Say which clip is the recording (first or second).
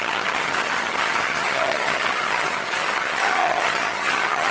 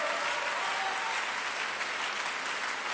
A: second